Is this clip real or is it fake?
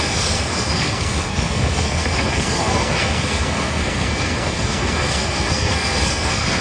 fake